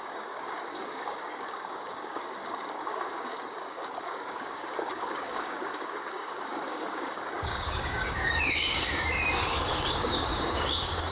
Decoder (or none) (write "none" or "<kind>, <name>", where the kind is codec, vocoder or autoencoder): codec, DAC